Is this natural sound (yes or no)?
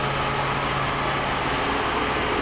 yes